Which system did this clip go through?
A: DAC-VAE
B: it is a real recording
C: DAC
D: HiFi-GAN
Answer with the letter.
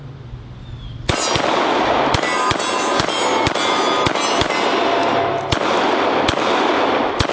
B